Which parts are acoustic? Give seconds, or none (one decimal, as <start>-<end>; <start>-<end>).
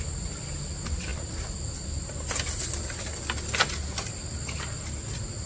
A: 0.0-5.5